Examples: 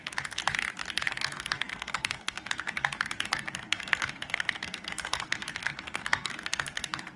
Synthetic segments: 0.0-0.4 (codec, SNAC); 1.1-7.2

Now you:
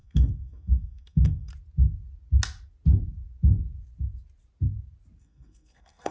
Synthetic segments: 0.0-1.5 (codec, SNAC); 5.2-6.1

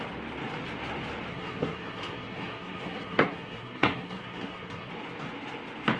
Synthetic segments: 1.3-4.9 (codec, SNAC)

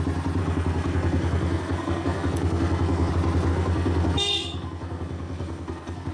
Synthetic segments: 0.4-3.1 (codec, SNAC); 3.5-6.1